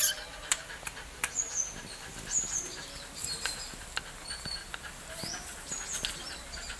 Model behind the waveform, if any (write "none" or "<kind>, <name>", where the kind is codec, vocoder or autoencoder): none